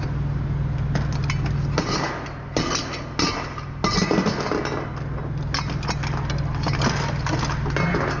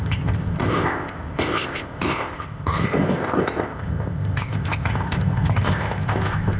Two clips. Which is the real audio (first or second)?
first